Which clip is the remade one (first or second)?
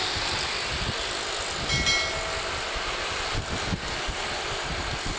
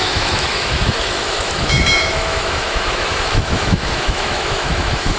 second